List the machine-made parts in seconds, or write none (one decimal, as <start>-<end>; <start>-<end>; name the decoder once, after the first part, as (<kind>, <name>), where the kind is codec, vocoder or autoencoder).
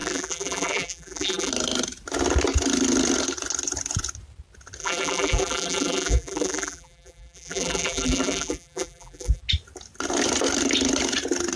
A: 0.0-1.5 (vocoder, BigVGAN v2); 4.8-9.4